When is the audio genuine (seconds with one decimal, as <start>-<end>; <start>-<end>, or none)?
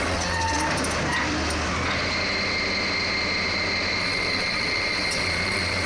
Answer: 0.6-4.0